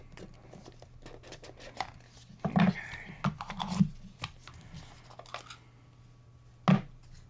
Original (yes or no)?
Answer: yes